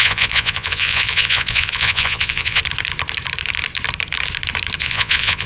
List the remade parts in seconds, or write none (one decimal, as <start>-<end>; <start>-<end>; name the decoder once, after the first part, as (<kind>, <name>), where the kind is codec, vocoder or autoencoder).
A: 0.0-2.6 (vocoder, Vocos); 4.8-5.5